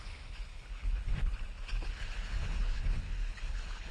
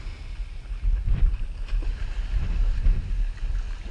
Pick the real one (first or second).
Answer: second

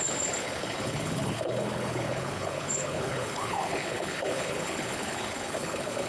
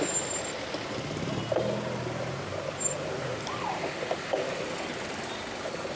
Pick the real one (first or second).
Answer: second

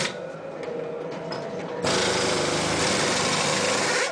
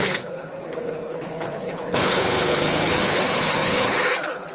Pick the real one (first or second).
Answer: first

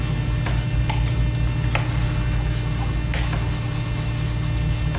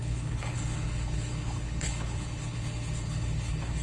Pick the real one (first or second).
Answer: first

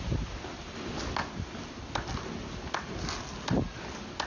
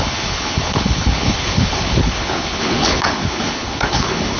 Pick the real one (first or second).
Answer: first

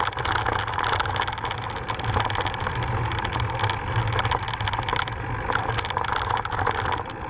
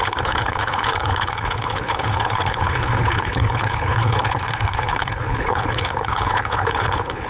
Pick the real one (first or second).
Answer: first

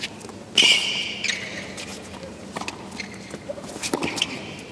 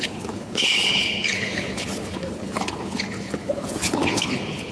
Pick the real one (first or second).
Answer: first